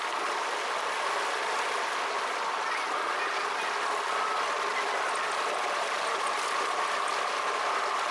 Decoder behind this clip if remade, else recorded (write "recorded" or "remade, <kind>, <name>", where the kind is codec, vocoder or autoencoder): recorded